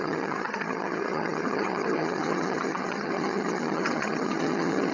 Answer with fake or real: fake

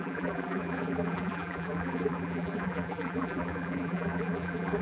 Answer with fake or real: fake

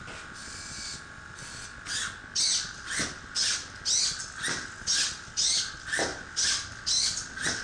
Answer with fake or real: real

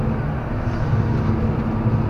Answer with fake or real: real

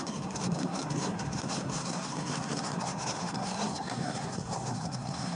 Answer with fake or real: fake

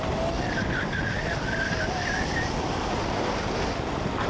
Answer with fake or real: real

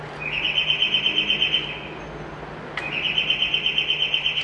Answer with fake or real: real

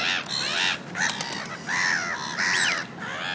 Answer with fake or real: real